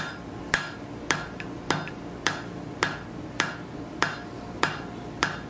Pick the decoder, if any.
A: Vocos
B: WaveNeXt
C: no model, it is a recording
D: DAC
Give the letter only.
C